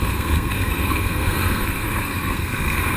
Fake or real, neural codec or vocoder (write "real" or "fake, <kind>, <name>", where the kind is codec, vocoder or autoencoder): fake, codec, SNAC